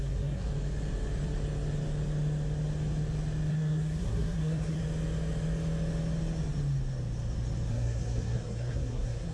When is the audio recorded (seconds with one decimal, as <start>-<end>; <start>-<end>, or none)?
0.5-3.5; 4.8-7.7